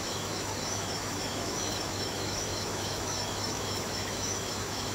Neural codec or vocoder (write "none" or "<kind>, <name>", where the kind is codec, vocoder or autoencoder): autoencoder, DAC-VAE